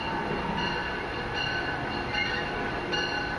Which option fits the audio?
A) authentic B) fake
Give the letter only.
A